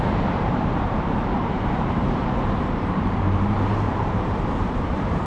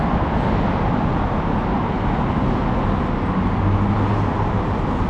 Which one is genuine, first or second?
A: second